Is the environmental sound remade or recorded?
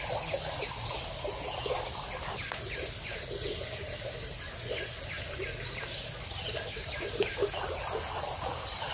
recorded